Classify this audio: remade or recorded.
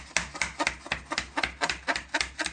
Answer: recorded